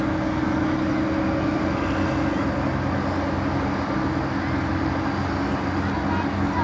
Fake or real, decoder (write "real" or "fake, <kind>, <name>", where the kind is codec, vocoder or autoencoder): real